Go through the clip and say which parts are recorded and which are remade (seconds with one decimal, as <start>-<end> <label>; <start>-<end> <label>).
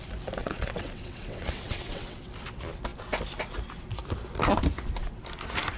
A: 0.0-0.4 recorded; 0.4-2.3 remade; 2.3-5.8 recorded